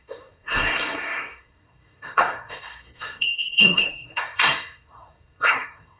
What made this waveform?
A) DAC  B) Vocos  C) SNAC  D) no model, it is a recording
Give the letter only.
C